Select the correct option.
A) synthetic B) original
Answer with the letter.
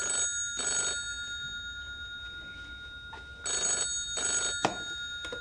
B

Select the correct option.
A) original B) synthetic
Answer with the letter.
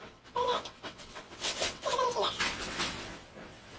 B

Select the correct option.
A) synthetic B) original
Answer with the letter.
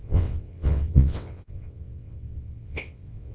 A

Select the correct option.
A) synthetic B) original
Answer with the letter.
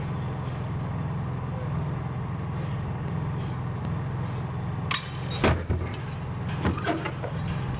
B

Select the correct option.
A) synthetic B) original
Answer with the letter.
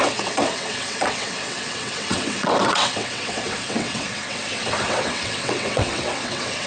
A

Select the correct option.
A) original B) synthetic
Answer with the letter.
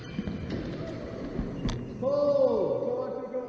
A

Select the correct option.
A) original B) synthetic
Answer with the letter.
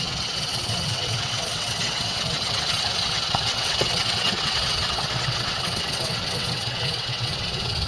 B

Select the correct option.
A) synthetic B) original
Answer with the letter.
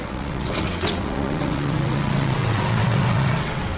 A